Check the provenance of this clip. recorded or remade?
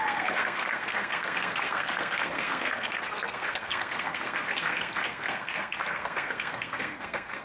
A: remade